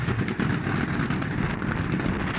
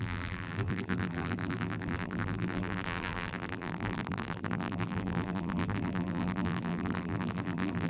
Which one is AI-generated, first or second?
second